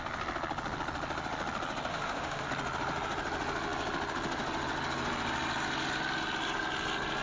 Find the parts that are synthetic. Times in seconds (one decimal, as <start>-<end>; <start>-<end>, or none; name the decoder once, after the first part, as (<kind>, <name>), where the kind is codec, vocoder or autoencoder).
1.9-2.5 (autoencoder, DAC-VAE)